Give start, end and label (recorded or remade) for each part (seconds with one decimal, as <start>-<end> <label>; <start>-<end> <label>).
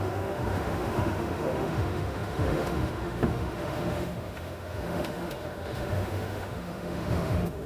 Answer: 0.0-7.7 remade